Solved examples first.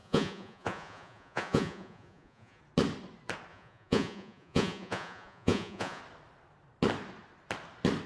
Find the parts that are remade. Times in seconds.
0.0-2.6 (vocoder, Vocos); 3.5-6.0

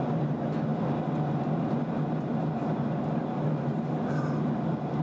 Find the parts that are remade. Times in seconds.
none

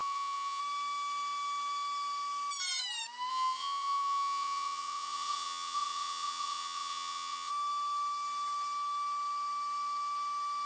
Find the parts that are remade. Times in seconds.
0.0-0.6 (vocoder, WaveNeXt); 3.3-7.5

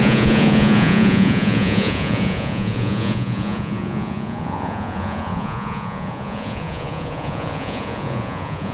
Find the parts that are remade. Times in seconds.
0.0-8.7 (vocoder, Vocos)

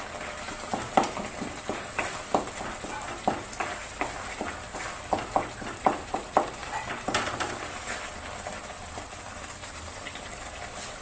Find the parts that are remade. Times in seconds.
none

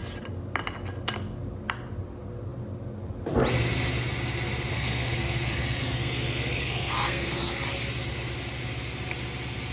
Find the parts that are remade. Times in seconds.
4.7-7.5 (codec, SNAC)